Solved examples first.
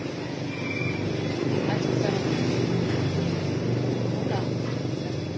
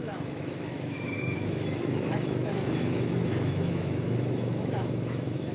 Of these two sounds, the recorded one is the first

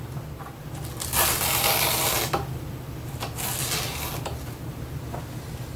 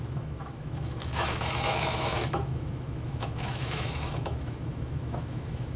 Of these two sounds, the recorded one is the first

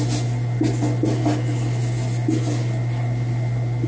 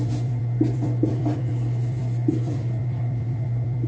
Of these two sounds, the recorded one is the first